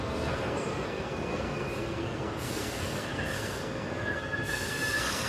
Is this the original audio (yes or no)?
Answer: no